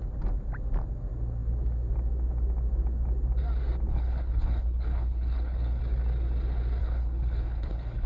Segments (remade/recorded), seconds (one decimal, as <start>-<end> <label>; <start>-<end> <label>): 0.0-3.9 recorded; 3.9-5.8 remade; 5.8-6.8 recorded; 6.8-8.1 remade